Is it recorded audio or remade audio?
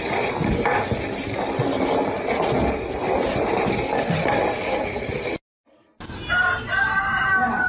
recorded